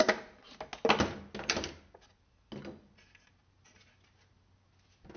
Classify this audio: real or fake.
real